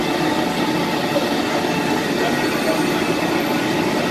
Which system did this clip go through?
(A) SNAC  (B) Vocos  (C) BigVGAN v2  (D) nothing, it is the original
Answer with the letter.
D